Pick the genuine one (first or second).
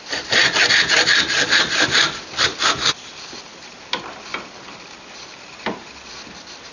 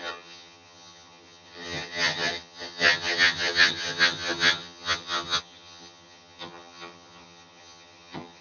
first